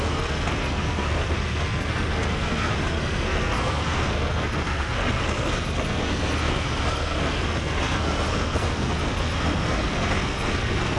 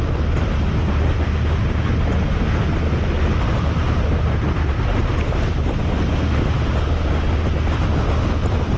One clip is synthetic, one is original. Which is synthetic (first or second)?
first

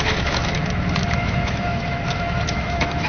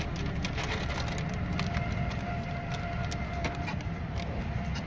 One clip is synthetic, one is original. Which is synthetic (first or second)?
first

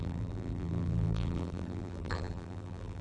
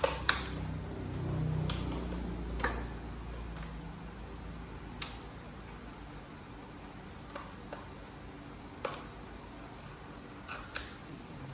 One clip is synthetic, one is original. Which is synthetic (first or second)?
first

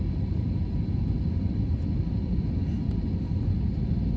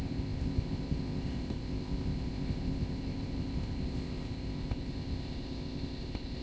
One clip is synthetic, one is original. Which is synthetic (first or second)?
second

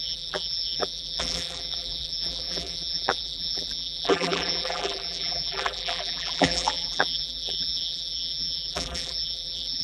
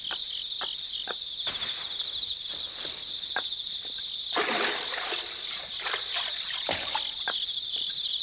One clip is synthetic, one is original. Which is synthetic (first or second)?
first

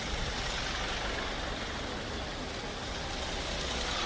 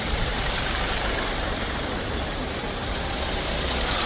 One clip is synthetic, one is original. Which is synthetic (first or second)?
second